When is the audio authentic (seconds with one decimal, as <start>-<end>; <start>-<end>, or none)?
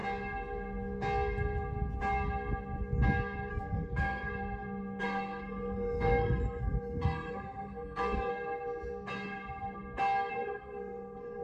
0.0-3.5; 4.3-5.0; 8.3-10.3